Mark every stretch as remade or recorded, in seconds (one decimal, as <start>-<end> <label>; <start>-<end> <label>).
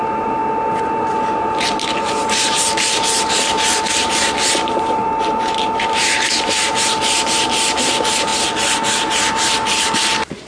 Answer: 0.0-0.4 remade; 0.4-1.0 recorded; 1.0-10.5 remade